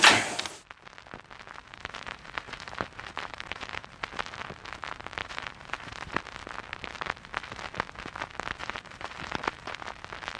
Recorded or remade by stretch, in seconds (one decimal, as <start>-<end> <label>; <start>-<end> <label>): 0.0-1.6 recorded; 1.6-3.9 remade; 3.9-5.2 recorded; 5.2-6.2 remade; 6.2-8.6 recorded; 8.6-9.7 remade; 9.7-10.4 recorded